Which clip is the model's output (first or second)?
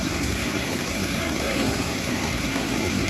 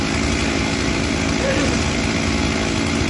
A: first